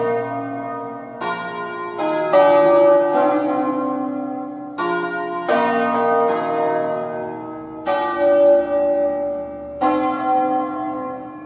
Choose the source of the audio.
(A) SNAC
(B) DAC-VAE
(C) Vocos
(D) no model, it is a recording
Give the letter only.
D